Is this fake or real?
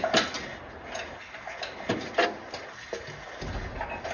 real